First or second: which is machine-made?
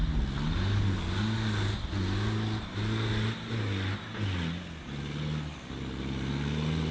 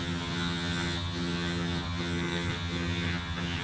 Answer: second